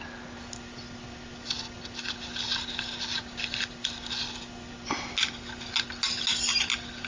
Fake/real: real